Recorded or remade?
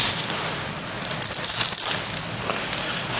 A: recorded